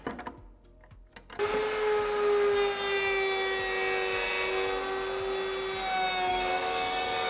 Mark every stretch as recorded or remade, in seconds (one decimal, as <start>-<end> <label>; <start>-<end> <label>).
0.0-6.3 recorded; 6.3-7.3 remade